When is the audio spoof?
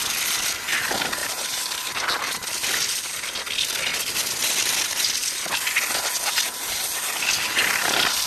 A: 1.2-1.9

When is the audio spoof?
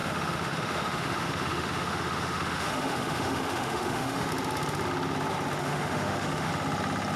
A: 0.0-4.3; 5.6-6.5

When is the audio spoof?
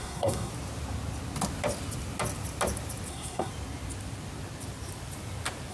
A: 0.0-0.5; 3.1-3.5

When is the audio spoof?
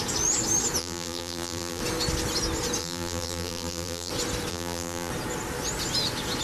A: 0.8-1.8; 2.8-4.1; 4.5-5.1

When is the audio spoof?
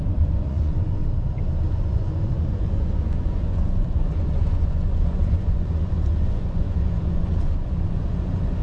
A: 0.0-1.0; 1.7-8.6